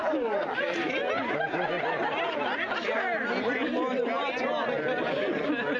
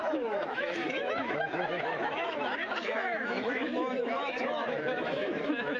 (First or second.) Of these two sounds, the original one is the first